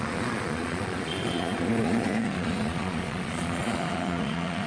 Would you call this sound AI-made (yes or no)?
yes